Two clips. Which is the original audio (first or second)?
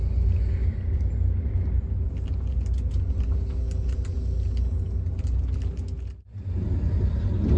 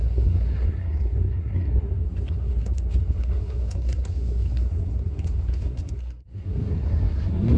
first